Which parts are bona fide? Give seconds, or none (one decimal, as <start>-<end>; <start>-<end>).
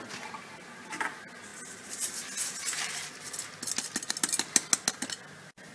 0.0-5.7